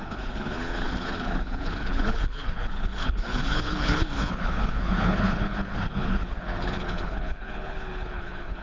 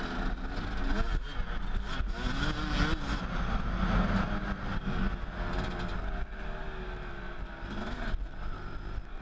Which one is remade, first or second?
first